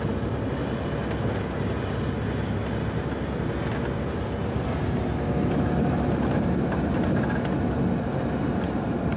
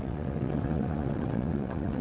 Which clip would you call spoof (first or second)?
second